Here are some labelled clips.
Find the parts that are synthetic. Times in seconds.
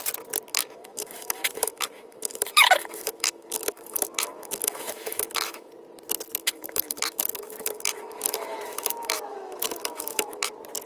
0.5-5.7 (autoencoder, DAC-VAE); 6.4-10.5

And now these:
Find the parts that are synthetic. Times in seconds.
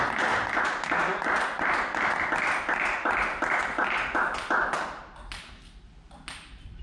none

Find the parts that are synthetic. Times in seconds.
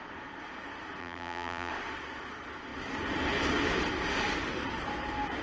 1.0-1.7 (vocoder, BigVGAN v2)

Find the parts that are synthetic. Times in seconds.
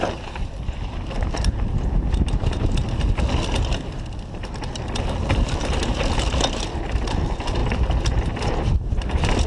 none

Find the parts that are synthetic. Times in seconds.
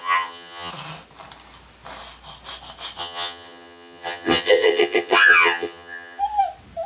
0.0-0.7 (vocoder, HiFi-GAN); 3.0-6.2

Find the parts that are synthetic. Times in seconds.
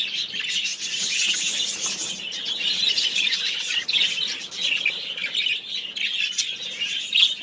none